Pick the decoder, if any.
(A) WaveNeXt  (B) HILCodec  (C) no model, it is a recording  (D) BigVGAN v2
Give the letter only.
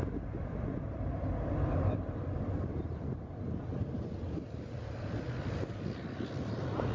C